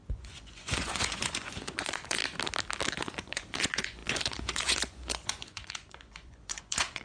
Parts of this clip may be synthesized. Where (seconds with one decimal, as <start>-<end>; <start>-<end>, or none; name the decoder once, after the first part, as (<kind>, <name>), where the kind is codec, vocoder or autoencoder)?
0.0-2.2 (vocoder, Vocos); 3.0-7.0